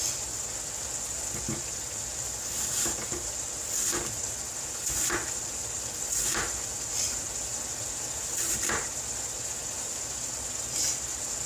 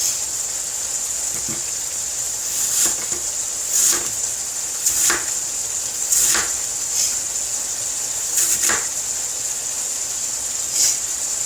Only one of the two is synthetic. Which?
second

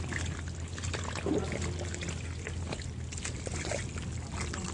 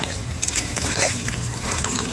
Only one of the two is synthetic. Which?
second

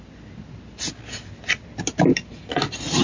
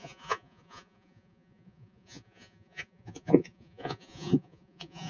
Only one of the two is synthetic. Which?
second